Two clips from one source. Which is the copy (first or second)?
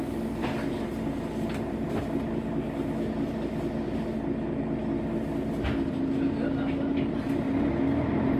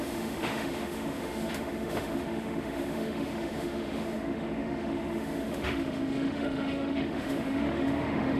second